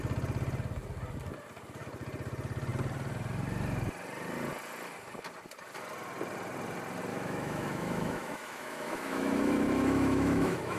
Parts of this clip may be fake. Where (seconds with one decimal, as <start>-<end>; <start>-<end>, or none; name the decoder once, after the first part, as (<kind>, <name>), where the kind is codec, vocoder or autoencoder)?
7.1-10.8 (autoencoder, DAC-VAE)

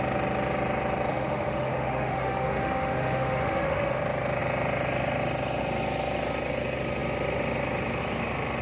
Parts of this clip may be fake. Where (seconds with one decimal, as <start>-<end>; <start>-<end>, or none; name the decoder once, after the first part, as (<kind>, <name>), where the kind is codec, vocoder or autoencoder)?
1.1-4.0 (autoencoder, DAC-VAE)